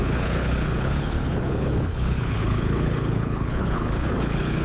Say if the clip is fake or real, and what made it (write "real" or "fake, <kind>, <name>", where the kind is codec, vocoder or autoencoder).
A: fake, codec, HILCodec